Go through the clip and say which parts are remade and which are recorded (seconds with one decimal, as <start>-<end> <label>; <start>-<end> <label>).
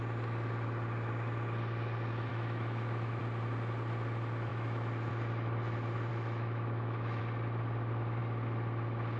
0.0-2.3 recorded; 2.3-3.2 remade; 3.2-4.5 recorded; 4.5-5.1 remade; 5.1-6.1 recorded; 6.1-7.2 remade; 7.2-9.2 recorded